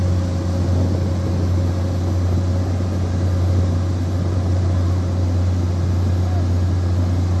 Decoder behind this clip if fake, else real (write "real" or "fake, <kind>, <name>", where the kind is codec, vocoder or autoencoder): real